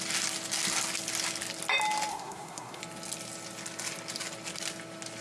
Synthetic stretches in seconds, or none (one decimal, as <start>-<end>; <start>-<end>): 2.1-2.8

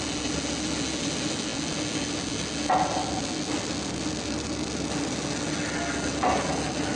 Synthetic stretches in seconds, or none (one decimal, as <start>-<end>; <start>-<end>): none

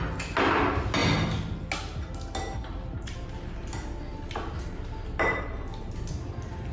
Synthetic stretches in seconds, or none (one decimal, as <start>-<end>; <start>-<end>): none

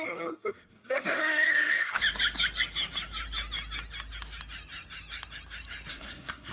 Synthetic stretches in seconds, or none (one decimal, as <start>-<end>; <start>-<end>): 0.0-2.0; 5.9-6.5

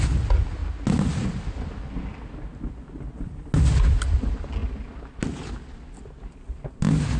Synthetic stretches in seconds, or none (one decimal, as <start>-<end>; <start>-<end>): none

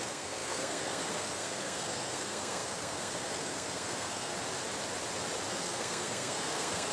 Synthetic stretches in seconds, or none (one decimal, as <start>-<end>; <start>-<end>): 0.0-4.3; 5.5-6.9